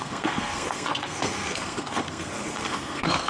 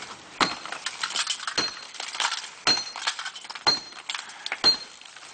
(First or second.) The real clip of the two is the second